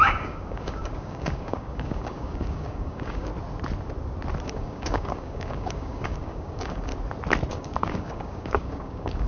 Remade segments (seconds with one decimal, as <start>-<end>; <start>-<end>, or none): 0.0-3.3; 4.4-6.9; 7.5-9.3